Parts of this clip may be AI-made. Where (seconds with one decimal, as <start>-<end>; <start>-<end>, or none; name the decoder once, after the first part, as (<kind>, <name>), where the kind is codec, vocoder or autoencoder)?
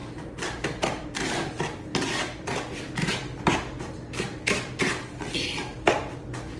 none